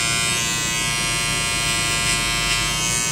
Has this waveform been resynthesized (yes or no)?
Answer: no